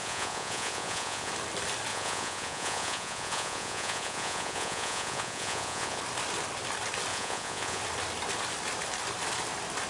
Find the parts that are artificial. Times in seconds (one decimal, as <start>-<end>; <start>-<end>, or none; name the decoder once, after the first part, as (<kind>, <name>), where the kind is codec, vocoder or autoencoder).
0.0-1.3 (vocoder, Vocos); 1.9-6.0; 7.1-7.8